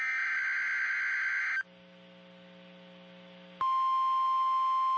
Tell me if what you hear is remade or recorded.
recorded